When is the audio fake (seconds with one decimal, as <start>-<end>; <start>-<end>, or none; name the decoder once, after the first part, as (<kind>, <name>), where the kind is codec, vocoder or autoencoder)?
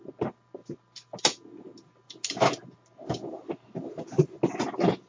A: none